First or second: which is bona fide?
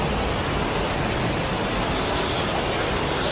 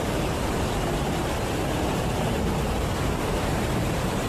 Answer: first